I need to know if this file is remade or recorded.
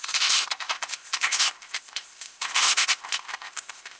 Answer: remade